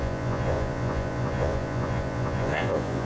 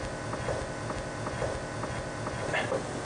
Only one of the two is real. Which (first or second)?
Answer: second